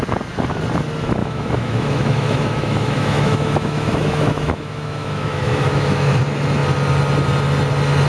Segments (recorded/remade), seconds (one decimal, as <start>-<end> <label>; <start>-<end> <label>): 0.0-1.2 recorded; 1.2-6.1 remade; 6.1-8.1 recorded